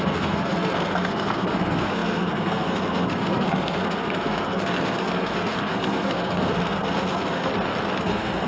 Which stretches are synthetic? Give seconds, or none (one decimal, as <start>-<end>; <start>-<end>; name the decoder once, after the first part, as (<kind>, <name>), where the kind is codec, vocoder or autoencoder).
0.0-7.5 (codec, SNAC); 8.0-8.5